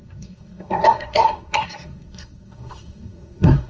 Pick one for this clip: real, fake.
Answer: fake